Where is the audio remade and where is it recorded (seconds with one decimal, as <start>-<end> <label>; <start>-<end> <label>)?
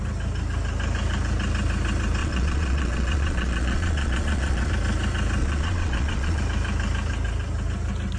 0.0-2.2 recorded; 2.2-4.7 remade; 4.7-5.4 recorded; 5.4-6.4 remade; 6.4-8.2 recorded